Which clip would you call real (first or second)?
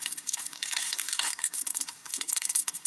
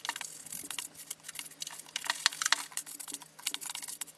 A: second